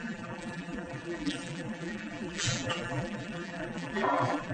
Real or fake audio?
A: fake